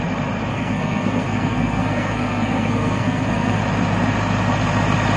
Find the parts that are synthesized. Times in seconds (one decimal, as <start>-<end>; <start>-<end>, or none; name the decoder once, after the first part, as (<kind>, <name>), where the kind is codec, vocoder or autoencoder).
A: 0.5-3.6 (codec, SNAC)